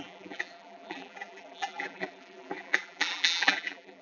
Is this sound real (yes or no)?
no